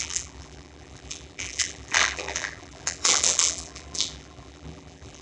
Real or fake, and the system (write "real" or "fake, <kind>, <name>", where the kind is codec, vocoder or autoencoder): fake, vocoder, BigVGAN v2